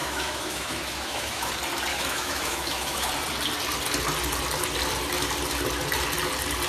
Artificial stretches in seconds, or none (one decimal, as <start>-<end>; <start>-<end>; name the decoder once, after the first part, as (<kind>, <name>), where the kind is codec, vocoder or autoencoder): 0.0-1.5 (autoencoder, DAC-VAE); 1.9-3.1